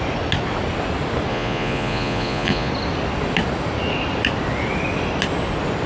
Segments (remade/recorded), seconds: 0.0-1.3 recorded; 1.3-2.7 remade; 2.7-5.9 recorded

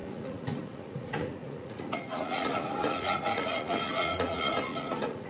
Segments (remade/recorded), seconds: 0.0-5.3 remade

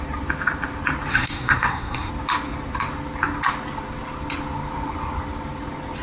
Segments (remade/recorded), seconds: 0.0-1.1 recorded; 1.1-2.1 remade; 2.1-6.0 recorded

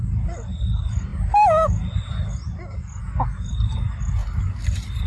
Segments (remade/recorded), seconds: 0.0-1.1 remade; 1.1-3.5 recorded; 3.5-5.1 remade